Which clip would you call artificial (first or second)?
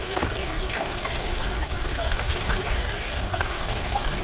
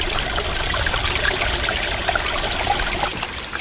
first